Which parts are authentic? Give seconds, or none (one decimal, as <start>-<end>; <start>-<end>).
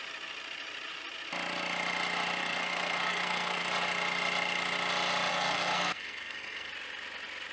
0.0-2.4; 3.6-5.3; 6.7-7.5